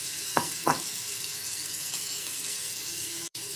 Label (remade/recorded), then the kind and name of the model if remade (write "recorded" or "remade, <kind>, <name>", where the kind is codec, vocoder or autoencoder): remade, codec, SNAC